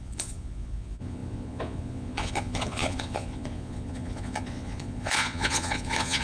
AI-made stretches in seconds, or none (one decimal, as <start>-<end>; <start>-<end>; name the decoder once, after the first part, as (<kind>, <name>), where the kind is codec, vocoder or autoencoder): 0.0-6.2 (vocoder, Vocos)